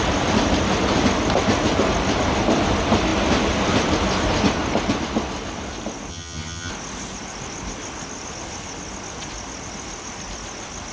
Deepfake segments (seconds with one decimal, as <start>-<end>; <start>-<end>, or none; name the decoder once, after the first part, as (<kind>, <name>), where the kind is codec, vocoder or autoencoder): 6.1-6.7 (vocoder, HiFi-GAN)